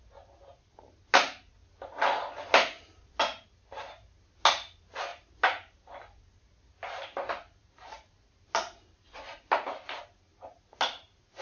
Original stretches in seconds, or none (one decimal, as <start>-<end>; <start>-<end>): 0.0-11.4